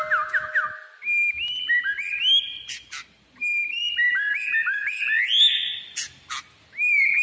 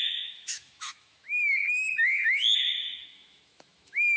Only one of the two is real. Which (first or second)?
first